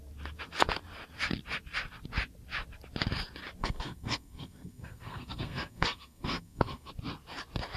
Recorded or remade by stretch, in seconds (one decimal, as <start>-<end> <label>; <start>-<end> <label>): 0.0-3.6 recorded; 3.6-6.9 remade; 6.9-7.8 recorded